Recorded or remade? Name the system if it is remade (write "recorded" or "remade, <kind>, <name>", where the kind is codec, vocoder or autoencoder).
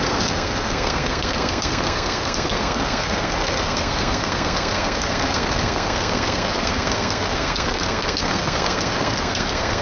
remade, codec, SNAC